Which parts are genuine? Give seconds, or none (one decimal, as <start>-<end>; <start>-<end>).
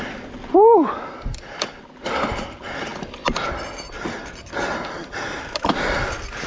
0.0-6.5